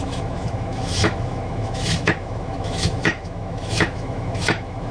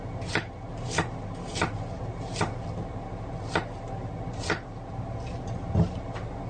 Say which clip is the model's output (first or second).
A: first